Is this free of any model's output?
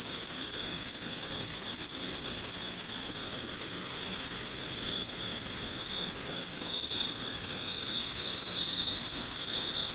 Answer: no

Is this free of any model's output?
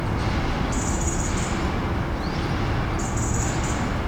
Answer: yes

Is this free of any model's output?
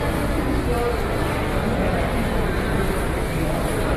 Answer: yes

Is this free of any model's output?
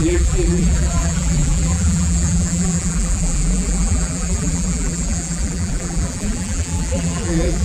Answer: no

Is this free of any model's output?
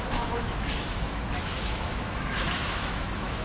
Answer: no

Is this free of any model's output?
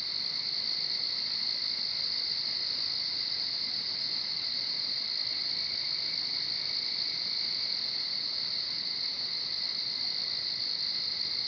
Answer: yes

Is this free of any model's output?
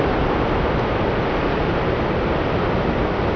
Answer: yes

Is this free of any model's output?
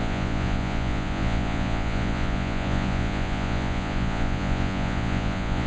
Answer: no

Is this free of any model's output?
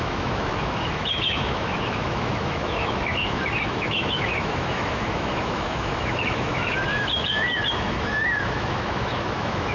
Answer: no